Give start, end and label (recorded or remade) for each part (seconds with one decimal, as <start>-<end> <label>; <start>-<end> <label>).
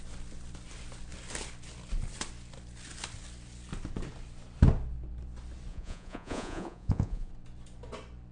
0.0-5.7 recorded; 5.7-7.3 remade; 7.3-8.3 recorded